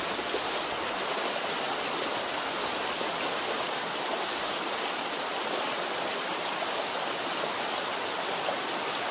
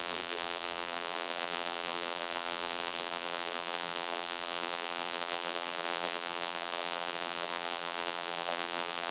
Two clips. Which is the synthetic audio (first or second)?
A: second